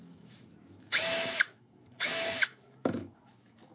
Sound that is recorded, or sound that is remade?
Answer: remade